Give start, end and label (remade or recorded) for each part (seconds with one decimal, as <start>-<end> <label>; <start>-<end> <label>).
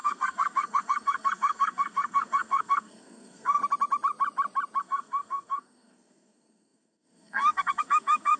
0.0-3.6 remade; 3.6-4.8 recorded; 4.8-8.4 remade